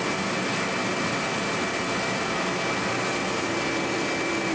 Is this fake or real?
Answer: real